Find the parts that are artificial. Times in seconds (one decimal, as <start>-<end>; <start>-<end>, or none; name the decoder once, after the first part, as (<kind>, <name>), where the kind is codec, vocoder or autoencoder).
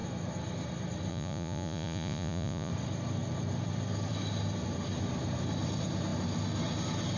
1.1-2.7 (vocoder, Vocos)